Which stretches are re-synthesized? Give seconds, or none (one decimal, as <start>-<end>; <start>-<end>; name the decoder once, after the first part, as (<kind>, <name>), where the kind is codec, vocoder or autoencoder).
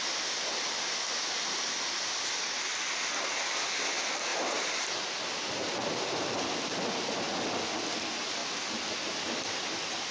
4.3-5.2 (vocoder, BigVGAN v2)